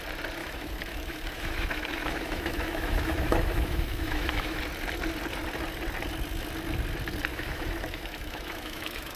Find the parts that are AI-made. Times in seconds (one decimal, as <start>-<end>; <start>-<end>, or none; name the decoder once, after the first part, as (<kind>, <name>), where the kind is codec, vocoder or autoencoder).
0.4-4.6 (autoencoder, DAC-VAE); 7.3-9.2